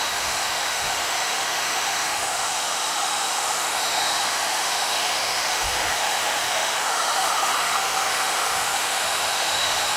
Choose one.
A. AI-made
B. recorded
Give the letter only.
A